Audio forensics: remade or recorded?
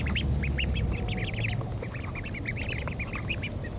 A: recorded